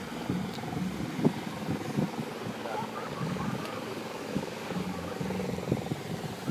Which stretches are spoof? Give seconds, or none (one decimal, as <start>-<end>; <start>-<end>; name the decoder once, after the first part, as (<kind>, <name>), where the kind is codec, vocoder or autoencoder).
2.6-5.1 (codec, DAC)